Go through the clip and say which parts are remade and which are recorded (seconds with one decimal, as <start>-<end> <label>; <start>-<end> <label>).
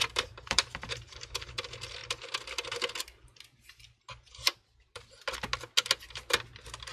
0.0-1.5 remade; 1.5-4.5 recorded; 4.5-5.1 remade; 5.1-6.9 recorded